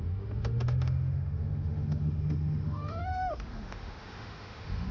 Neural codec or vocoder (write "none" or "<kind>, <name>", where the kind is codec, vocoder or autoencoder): autoencoder, DAC-VAE